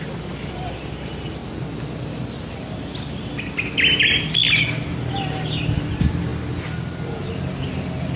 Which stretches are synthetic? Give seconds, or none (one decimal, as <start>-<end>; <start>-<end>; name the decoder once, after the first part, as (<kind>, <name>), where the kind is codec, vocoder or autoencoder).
0.0-1.4 (vocoder, BigVGAN v2); 3.2-4.4; 5.2-6.3; 7.1-8.2